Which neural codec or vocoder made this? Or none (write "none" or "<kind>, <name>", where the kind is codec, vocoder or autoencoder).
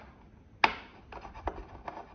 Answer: none